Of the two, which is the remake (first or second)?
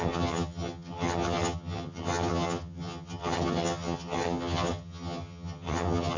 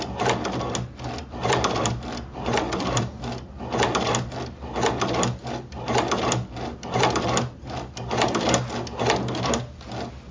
first